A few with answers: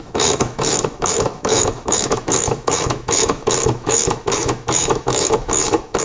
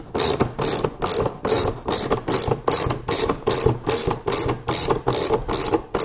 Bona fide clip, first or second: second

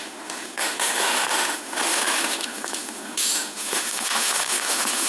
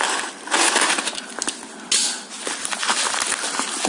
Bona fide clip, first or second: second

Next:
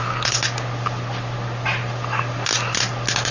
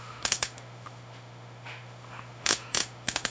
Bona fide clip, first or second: first